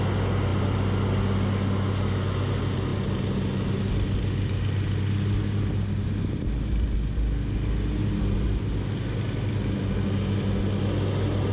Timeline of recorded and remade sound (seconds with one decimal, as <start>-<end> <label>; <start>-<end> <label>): 0.0-11.5 recorded

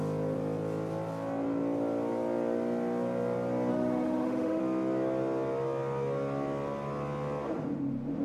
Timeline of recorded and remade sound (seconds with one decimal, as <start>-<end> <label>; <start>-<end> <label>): 0.0-3.7 recorded; 3.7-4.6 remade; 4.6-8.2 recorded

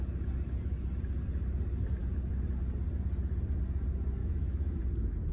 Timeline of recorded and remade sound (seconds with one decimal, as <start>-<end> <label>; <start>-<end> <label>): 0.0-4.2 recorded; 4.2-4.8 remade; 4.8-5.3 recorded